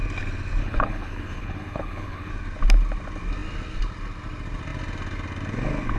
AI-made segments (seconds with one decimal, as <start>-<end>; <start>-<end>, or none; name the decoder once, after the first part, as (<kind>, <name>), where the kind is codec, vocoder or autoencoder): 0.6-2.3 (codec, HILCodec)